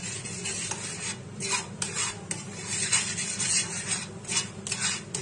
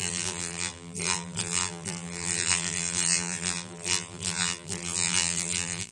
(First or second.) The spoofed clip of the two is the second